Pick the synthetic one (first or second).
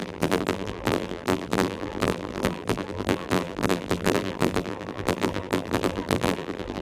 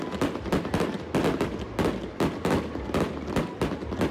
first